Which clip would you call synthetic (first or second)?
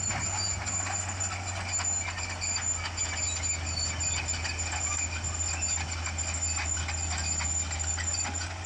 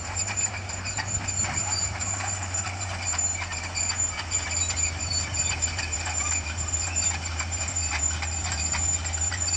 second